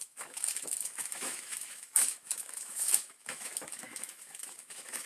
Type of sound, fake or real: fake